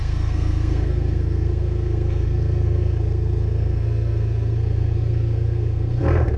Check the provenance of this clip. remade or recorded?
remade